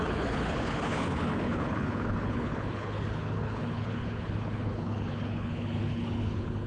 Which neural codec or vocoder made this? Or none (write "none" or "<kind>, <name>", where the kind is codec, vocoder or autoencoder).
codec, HILCodec